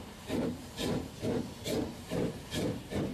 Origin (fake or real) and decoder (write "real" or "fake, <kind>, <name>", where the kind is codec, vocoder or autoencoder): real